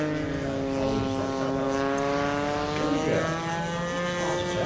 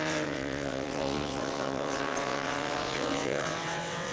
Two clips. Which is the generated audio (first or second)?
second